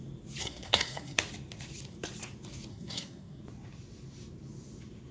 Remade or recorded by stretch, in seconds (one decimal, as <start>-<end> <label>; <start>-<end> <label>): 0.0-0.4 recorded; 0.4-1.2 remade; 1.2-2.7 recorded; 2.7-3.4 remade; 3.4-5.1 recorded